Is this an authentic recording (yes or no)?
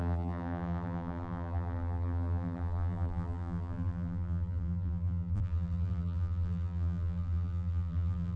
no